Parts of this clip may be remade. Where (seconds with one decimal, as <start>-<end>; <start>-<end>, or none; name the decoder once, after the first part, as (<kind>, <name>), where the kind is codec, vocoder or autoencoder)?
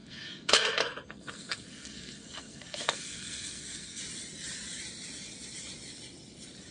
0.0-4.0 (codec, SNAC)